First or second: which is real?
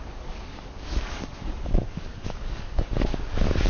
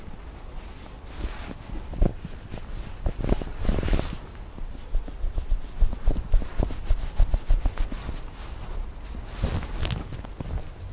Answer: second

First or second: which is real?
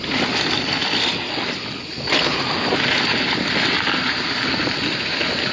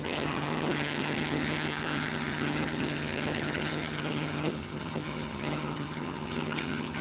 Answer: first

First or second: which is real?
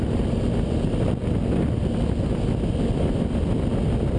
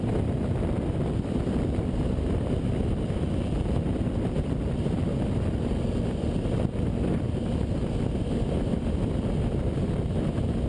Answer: first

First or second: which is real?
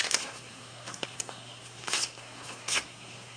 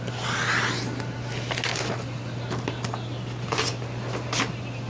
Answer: second